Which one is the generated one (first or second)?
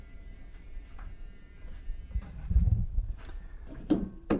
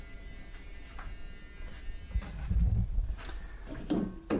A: first